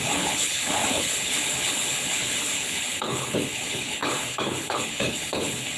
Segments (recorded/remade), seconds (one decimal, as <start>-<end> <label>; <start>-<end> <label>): 0.0-5.8 remade